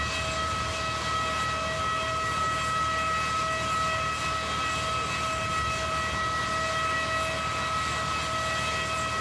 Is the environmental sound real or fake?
real